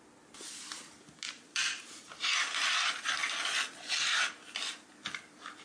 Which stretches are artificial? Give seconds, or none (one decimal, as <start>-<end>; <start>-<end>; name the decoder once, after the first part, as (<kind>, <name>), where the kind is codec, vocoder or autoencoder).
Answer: none